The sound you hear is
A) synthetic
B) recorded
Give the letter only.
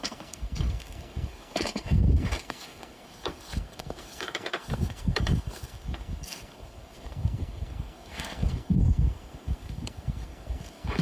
A